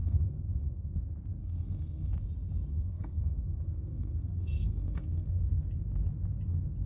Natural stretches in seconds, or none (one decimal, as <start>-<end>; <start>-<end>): 1.0-1.4; 2.1-2.7; 5.4-6.9